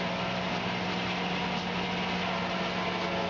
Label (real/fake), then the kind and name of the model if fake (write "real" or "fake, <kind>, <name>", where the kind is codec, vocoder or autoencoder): real